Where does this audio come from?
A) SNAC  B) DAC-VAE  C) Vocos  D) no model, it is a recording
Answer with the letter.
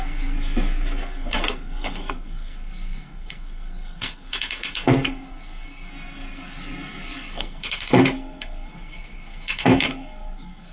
A